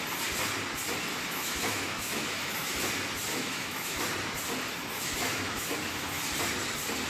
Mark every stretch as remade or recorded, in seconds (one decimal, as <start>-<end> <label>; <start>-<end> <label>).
0.0-1.1 recorded; 1.1-2.9 remade; 2.9-3.3 recorded; 3.3-4.0 remade; 4.0-4.9 recorded; 4.9-6.2 remade; 6.2-7.1 recorded